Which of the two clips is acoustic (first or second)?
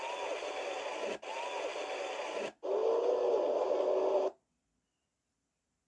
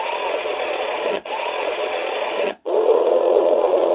first